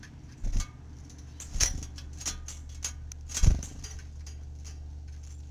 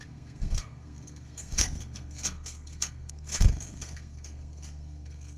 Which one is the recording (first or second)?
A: first